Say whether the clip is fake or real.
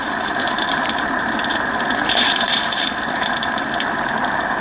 fake